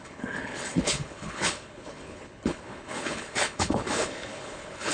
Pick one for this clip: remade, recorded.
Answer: remade